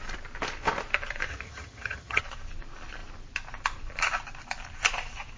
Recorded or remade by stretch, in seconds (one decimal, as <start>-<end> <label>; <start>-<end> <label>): 0.0-1.3 recorded; 1.3-2.2 remade; 2.2-5.4 recorded